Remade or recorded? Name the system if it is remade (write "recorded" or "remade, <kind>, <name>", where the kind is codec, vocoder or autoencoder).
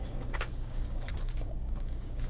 remade, codec, DAC